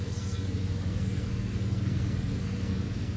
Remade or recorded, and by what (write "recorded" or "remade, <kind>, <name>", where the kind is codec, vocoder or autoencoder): remade, codec, SNAC